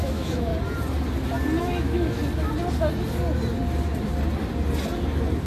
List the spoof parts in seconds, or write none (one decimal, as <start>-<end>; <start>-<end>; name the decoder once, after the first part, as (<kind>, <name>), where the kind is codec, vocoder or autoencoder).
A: 0.0-0.5 (autoencoder, DAC-VAE); 1.6-2.2